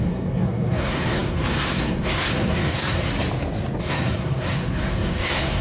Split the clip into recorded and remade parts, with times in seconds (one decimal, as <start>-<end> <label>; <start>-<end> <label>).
0.0-3.1 remade; 3.1-3.8 recorded; 3.8-5.6 remade